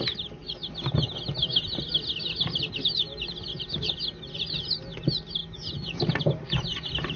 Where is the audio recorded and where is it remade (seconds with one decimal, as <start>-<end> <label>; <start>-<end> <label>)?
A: 0.0-7.2 recorded